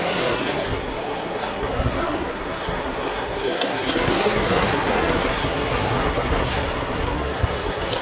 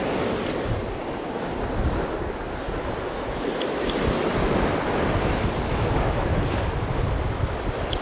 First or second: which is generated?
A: first